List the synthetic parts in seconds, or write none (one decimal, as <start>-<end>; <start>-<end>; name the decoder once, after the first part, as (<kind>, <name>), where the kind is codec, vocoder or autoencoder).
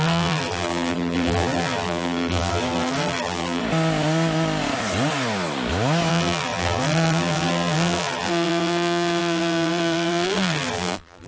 0.0-3.6 (vocoder, BigVGAN v2); 6.1-11.3